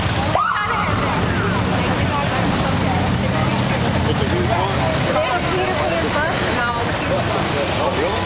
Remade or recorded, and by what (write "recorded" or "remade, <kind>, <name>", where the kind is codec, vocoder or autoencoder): recorded